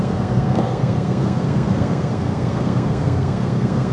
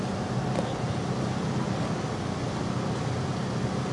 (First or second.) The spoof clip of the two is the first